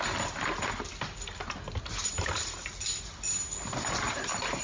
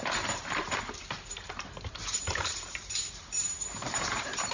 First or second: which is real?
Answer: first